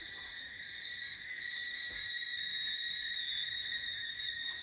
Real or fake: fake